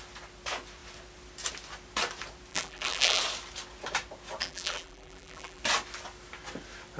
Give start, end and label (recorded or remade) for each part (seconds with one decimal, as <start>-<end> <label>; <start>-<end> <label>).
0.0-2.5 recorded; 2.5-3.2 remade; 3.2-4.4 recorded; 4.4-5.6 remade; 5.6-7.0 recorded